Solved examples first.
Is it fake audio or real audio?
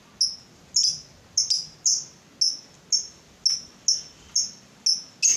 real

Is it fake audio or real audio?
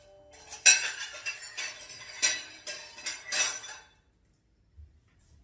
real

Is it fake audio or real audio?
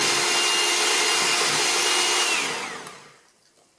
real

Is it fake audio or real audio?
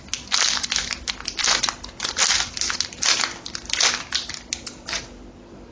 real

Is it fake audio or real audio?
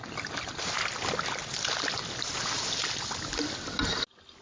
real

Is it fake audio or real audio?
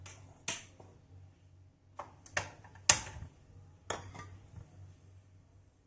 real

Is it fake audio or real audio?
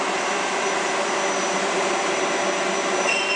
real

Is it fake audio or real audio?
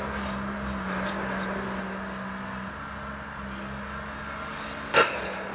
real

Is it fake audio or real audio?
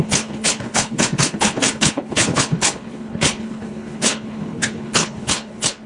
fake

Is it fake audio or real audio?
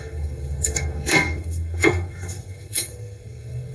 fake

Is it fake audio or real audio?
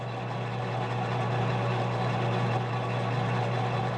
real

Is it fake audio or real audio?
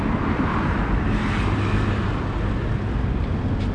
real